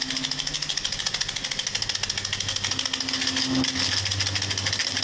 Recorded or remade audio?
recorded